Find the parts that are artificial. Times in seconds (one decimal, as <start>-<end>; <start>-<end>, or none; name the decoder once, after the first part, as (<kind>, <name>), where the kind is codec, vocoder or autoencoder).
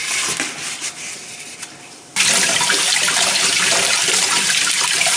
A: 3.1-5.2 (vocoder, BigVGAN v2)